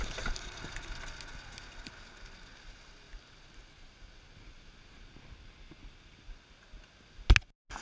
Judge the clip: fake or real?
real